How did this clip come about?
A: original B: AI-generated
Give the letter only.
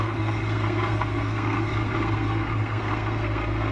B